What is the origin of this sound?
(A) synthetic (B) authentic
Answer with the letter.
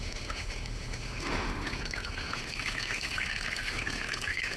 A